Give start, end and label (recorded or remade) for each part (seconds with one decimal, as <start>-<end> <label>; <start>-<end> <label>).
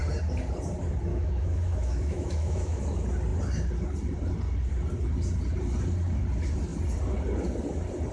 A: 0.0-1.1 recorded; 1.1-2.8 remade; 2.8-8.1 recorded